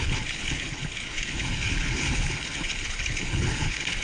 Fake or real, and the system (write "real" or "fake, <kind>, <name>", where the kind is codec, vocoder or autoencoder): fake, codec, HILCodec